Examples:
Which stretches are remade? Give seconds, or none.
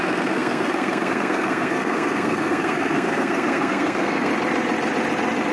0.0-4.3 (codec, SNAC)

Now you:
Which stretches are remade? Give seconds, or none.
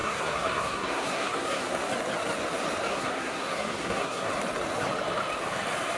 0.0-1.9 (codec, SNAC); 2.9-4.3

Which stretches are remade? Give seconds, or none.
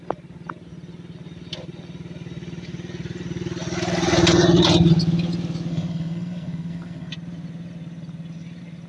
5.7-7.1 (codec, SNAC)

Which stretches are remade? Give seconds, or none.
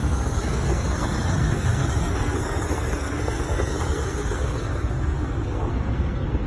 0.0-6.5 (codec, SNAC)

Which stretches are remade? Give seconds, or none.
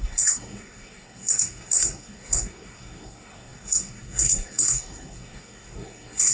0.0-6.3 (codec, SNAC)